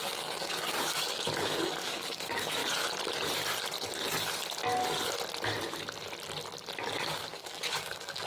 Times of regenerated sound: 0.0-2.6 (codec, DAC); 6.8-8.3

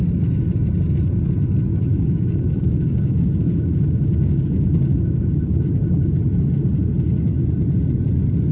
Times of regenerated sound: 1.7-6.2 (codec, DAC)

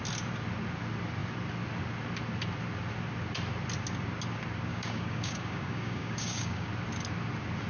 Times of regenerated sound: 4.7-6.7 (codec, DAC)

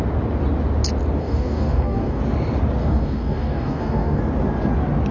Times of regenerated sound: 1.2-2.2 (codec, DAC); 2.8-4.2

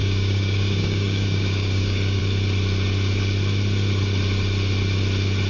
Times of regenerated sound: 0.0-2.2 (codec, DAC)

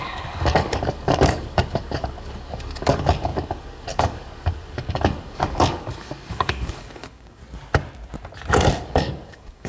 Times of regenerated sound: 0.0-7.4 (codec, DAC); 8.5-9.7